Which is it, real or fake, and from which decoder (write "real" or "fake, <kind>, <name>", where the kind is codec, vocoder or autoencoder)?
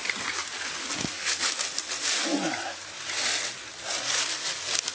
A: real